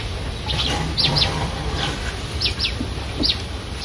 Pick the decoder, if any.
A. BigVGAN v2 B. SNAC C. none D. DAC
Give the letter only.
C